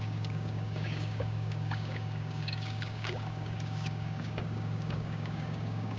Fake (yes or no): yes